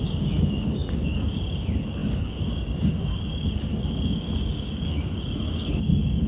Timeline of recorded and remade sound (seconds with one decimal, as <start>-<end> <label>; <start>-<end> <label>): 0.0-6.3 remade